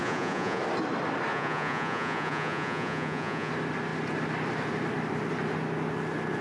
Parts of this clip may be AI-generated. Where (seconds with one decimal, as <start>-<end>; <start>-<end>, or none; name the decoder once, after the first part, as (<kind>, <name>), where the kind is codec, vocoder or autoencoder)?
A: 0.0-0.6 (vocoder, Vocos); 1.3-3.5